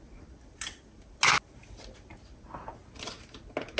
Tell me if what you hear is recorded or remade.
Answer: recorded